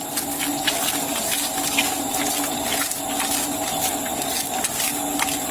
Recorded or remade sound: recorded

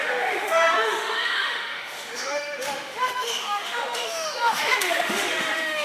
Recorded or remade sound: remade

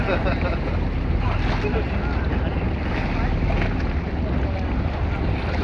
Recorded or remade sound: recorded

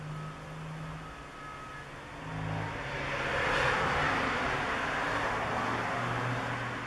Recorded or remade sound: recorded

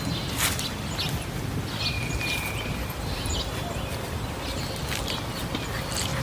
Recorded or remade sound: recorded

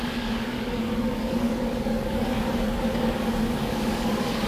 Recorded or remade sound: remade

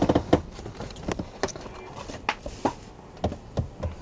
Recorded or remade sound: recorded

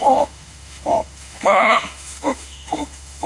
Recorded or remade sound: remade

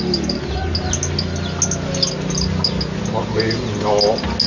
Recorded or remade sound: recorded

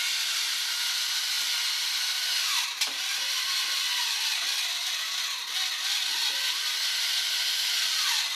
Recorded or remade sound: recorded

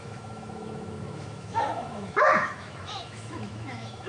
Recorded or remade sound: remade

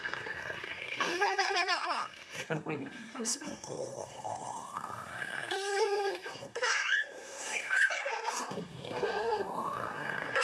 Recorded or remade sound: remade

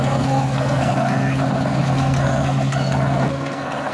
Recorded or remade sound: remade